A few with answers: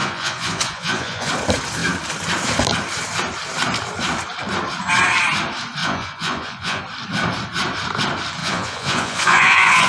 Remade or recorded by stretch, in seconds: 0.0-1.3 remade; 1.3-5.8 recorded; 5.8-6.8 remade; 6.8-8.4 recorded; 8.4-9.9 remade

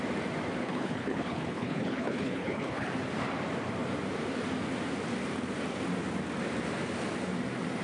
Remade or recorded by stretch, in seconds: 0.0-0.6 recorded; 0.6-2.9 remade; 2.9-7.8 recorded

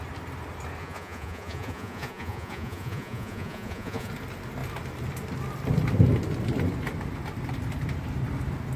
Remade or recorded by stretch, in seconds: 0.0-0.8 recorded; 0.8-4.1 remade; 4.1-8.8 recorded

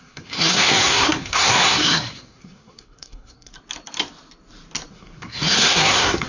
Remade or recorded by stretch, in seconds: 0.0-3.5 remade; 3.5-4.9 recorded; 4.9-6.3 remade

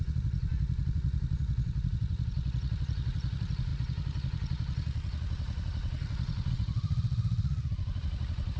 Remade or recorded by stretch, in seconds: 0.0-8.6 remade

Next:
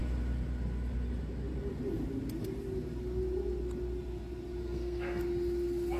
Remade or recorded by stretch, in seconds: 0.0-4.6 recorded; 4.6-5.2 remade; 5.2-6.0 recorded

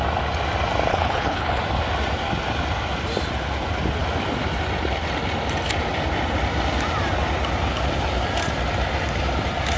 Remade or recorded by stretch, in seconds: 0.0-0.9 recorded; 0.9-1.6 remade; 1.6-9.8 recorded